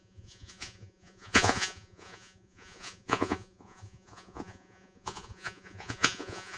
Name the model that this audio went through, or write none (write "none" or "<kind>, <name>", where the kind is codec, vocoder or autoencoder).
vocoder, Vocos